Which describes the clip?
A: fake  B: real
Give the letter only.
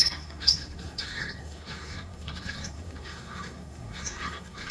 A